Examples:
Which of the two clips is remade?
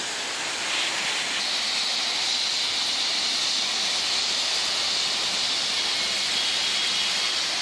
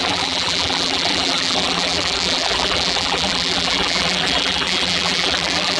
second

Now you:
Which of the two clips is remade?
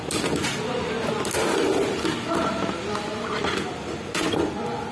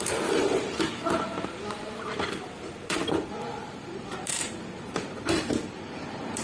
second